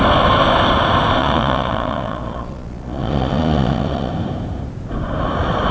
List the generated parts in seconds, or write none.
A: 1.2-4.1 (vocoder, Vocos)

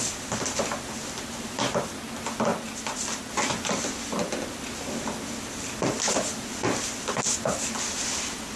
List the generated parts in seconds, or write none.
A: none